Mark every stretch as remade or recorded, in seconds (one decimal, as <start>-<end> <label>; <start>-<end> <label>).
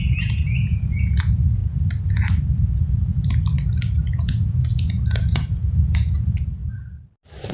0.0-1.6 remade; 1.6-4.1 recorded; 4.1-6.6 remade; 6.6-7.5 recorded